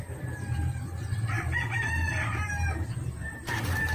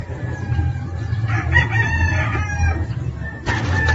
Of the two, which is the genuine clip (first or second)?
second